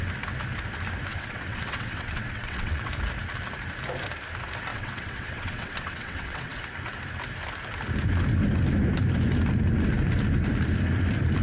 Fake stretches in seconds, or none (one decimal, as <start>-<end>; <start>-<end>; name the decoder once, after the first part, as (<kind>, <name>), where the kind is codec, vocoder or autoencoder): 1.1-2.9 (vocoder, WaveNeXt); 4.7-6.6